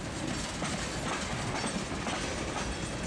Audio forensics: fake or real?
real